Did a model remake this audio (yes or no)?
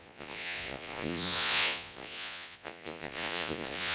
yes